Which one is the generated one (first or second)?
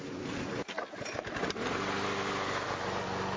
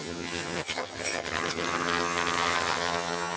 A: second